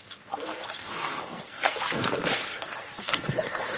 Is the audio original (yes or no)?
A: no